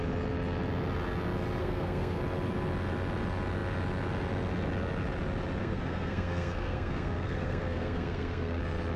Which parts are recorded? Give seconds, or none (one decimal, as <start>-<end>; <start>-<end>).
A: 0.0-1.6; 2.2-5.6; 8.6-9.0

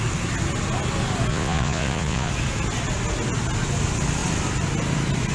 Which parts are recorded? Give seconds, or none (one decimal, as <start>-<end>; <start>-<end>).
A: 0.0-1.3; 2.3-5.3

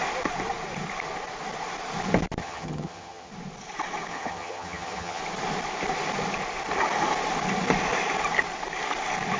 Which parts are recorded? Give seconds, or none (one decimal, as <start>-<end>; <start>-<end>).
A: 0.0-2.4; 3.3-4.1; 5.2-9.4

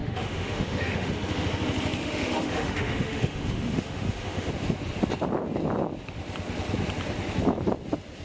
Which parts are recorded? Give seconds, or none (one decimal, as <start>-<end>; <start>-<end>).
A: 1.1-2.0; 4.5-8.2

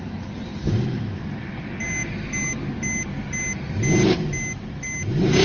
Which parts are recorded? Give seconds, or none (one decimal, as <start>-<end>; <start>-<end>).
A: 0.0-5.4

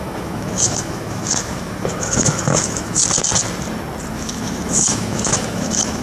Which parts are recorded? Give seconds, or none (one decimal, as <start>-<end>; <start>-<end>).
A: 3.0-4.1